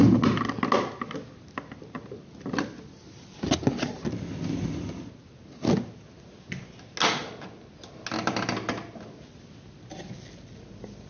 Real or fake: real